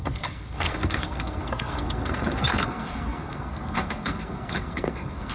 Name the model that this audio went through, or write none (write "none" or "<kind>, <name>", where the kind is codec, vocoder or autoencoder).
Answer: codec, SNAC